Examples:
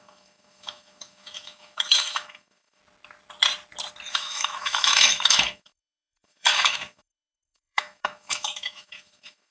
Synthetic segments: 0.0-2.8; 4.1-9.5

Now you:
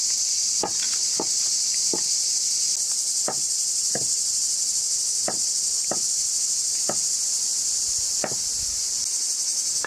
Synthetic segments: none

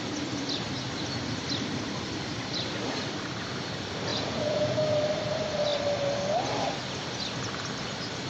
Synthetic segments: 4.1-4.8